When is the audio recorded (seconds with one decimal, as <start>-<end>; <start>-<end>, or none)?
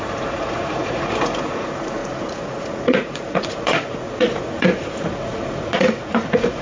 none